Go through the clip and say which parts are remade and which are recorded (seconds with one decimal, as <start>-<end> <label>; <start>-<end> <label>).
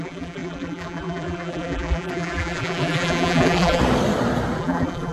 0.0-3.8 remade; 3.8-4.6 recorded; 4.6-5.1 remade